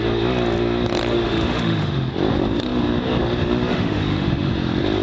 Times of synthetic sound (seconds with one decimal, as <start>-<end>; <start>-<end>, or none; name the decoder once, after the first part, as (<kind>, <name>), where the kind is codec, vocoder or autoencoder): 1.1-2.1 (autoencoder, DAC-VAE); 3.7-4.5